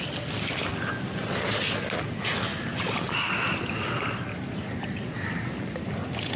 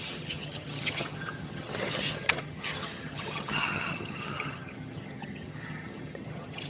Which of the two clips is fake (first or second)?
second